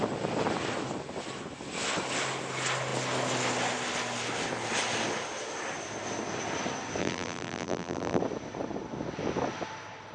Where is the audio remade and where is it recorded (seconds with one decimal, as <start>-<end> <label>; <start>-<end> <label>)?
0.0-7.0 recorded; 7.0-8.2 remade; 8.2-10.1 recorded